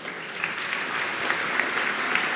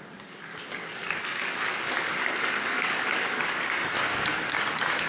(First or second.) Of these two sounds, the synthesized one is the second